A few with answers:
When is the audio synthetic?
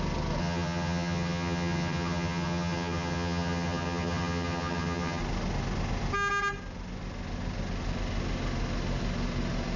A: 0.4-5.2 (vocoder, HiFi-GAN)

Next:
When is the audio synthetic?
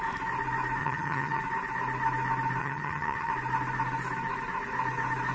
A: 0.8-1.4 (vocoder, HiFi-GAN); 2.6-3.3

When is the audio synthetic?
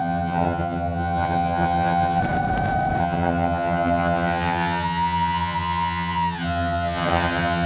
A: 0.0-2.2 (vocoder, HiFi-GAN); 3.0-7.7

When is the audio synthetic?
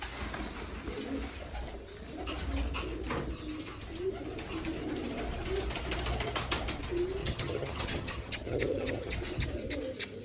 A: 7.2-9.1 (vocoder, HiFi-GAN)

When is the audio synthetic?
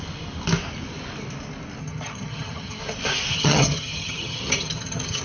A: 1.8-2.8 (vocoder, HiFi-GAN); 3.3-5.2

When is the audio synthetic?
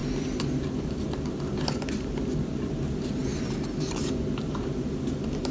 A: none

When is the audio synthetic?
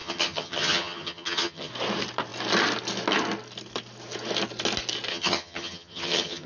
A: 0.0-1.7 (vocoder, HiFi-GAN); 5.1-6.5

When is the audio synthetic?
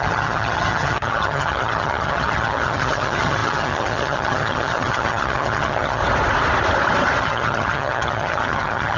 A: 0.0-6.0 (vocoder, HiFi-GAN); 7.2-9.0